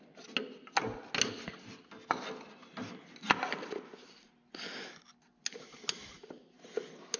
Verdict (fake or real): real